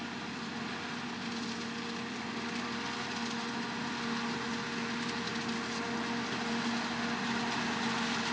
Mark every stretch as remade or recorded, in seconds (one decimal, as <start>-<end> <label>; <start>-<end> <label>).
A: 0.0-8.3 recorded